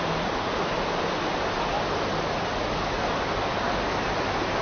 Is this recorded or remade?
recorded